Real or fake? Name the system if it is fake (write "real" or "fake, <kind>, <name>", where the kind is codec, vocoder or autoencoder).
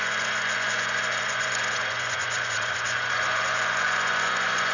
fake, vocoder, Vocos